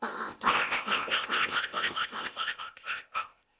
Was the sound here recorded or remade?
remade